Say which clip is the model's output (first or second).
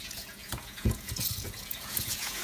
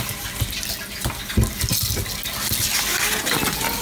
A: first